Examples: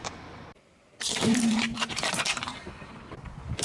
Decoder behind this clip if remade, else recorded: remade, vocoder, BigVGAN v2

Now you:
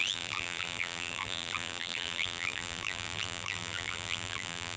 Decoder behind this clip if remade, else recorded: remade, vocoder, BigVGAN v2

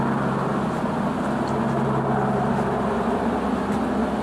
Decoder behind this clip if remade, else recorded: recorded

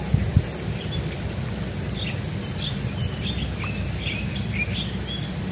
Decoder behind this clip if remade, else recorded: recorded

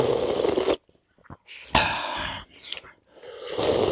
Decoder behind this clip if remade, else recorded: recorded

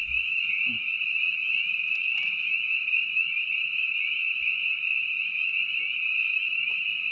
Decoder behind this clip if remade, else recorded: remade, vocoder, BigVGAN v2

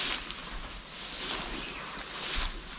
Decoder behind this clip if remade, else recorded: recorded